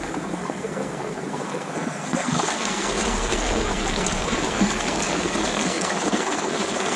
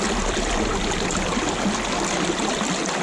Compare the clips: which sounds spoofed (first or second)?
first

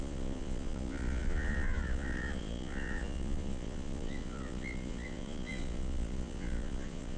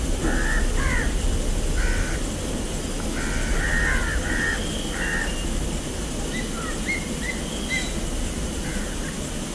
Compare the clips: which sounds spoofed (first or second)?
first